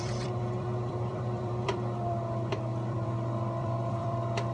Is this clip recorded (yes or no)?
no